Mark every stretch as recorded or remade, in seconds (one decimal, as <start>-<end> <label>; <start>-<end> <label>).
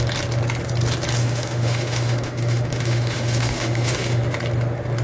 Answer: 0.0-1.2 recorded; 1.2-4.2 remade; 4.2-5.0 recorded